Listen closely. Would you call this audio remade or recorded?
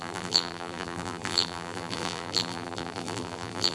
remade